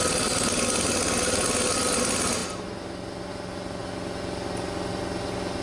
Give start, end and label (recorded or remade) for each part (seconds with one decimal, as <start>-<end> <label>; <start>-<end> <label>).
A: 0.0-5.6 recorded